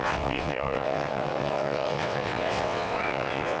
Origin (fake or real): fake